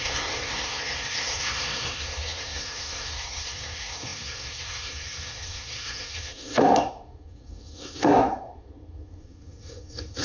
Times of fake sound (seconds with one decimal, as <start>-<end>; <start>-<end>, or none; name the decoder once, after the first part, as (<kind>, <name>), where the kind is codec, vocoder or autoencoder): 0.0-10.2 (codec, SNAC)